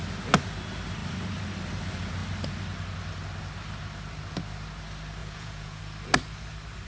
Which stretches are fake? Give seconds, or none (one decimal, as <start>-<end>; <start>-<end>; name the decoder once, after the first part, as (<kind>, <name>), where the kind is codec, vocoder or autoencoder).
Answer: 5.2-5.8 (vocoder, Vocos)